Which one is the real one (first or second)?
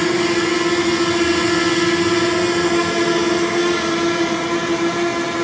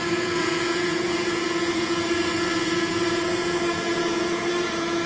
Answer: first